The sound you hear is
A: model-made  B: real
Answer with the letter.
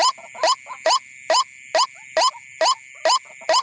B